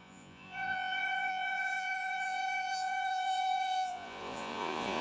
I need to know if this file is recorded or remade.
remade